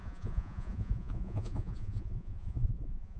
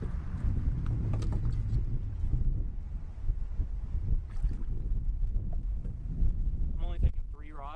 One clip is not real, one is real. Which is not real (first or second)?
first